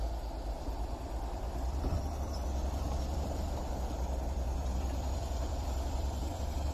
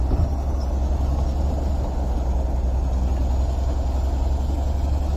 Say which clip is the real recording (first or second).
second